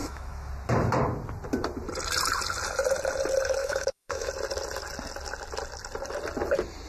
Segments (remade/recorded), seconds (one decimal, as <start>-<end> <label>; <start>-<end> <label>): 0.0-0.5 remade; 0.5-3.6 recorded; 3.6-4.3 remade; 4.3-6.9 recorded